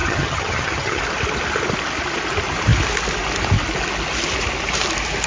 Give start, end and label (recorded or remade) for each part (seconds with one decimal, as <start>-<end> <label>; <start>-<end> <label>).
0.0-1.0 remade; 1.0-5.3 recorded